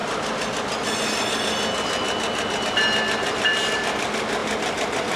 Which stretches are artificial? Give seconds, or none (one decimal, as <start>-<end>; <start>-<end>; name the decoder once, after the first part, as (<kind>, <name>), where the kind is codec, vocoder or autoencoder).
4.4-5.2 (vocoder, BigVGAN v2)